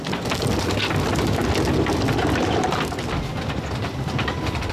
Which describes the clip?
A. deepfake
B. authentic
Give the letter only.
B